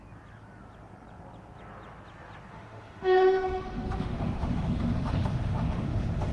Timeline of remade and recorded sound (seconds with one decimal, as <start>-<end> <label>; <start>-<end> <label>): 0.0-2.5 recorded; 2.5-6.3 remade